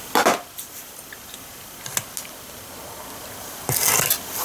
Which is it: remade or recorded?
recorded